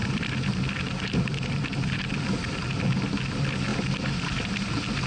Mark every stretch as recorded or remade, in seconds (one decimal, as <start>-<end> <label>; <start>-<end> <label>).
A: 0.0-2.8 remade; 2.8-5.1 recorded